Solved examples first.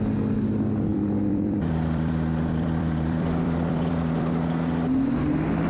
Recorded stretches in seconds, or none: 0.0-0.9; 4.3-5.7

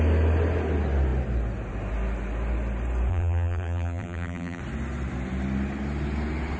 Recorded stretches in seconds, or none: 0.0-3.1; 4.6-6.6

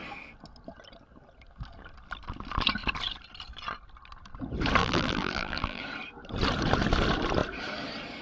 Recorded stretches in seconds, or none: 0.0-4.8; 5.8-8.2

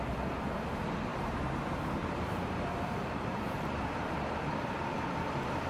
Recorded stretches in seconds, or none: 0.0-1.1; 4.5-5.7

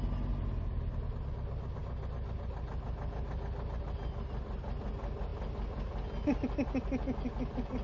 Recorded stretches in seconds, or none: 0.0-7.8

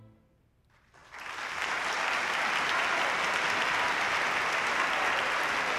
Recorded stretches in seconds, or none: 0.0-5.8